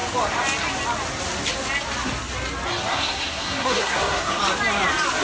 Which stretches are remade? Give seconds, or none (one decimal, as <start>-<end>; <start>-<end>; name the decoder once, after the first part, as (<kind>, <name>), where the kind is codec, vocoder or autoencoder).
2.9-4.4 (codec, SNAC)